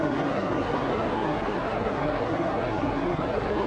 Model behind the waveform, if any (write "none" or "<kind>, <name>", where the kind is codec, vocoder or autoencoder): codec, SNAC